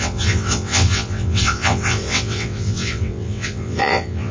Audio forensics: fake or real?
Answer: fake